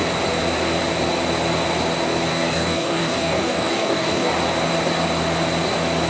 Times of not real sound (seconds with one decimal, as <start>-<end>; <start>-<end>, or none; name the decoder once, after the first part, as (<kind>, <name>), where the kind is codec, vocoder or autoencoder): 2.3-4.3 (codec, DAC)